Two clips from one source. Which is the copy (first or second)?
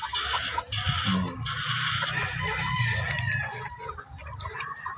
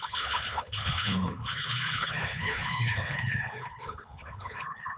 second